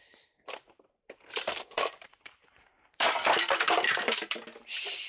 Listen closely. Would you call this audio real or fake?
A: fake